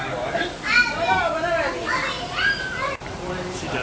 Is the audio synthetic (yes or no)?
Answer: no